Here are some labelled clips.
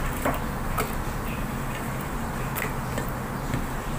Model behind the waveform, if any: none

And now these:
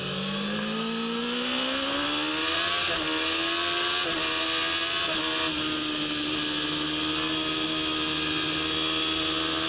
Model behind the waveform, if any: none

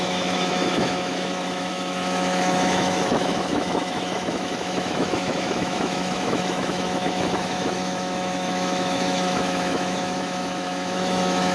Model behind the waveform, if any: autoencoder, DAC-VAE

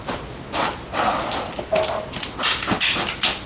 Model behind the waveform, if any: none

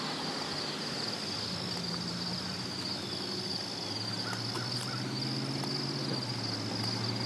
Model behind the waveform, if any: none